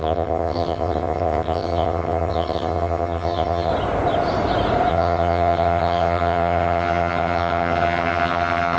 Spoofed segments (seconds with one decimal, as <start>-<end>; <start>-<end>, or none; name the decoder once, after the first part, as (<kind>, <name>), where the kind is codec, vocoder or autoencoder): 0.0-3.7 (vocoder, HiFi-GAN); 4.9-8.8

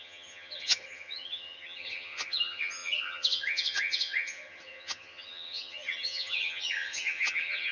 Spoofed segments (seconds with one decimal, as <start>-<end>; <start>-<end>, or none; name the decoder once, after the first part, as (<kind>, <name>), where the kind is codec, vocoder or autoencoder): 0.0-7.7 (vocoder, HiFi-GAN)

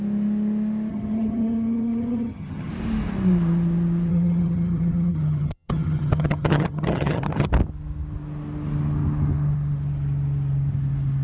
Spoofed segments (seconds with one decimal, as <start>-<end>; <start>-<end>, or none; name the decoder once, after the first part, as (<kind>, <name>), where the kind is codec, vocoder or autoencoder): 0.9-2.7 (vocoder, HiFi-GAN); 4.1-7.5

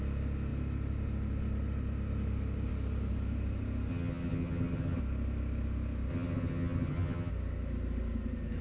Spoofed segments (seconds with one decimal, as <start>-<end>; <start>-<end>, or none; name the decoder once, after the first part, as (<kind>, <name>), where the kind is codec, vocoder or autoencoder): 3.9-5.0 (vocoder, HiFi-GAN); 6.1-7.3

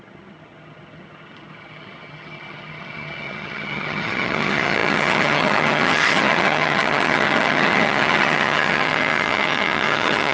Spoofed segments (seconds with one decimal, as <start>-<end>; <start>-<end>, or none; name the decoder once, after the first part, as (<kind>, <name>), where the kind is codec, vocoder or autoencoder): 0.0-10.3 (vocoder, HiFi-GAN)

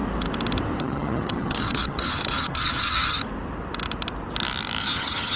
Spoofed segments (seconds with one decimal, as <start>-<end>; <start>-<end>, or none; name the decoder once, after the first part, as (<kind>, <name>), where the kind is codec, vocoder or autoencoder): 0.8-3.2 (vocoder, HiFi-GAN); 4.8-5.4